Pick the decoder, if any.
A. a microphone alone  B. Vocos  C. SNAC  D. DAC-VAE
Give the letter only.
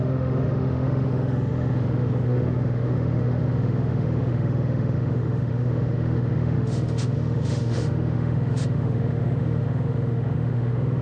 D